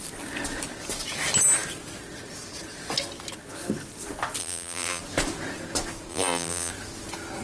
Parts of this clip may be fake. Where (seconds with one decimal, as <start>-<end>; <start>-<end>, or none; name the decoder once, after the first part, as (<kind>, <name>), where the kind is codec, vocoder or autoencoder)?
4.4-5.0 (vocoder, BigVGAN v2); 6.1-6.7

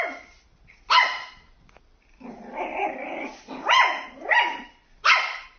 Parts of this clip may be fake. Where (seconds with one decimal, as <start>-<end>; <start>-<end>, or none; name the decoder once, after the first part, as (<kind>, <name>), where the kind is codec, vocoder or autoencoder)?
0.0-3.3 (vocoder, BigVGAN v2); 4.6-5.6